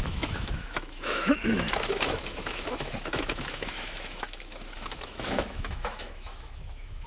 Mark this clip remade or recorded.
remade